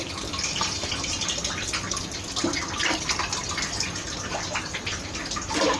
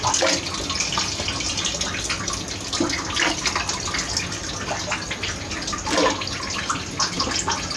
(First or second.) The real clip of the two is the second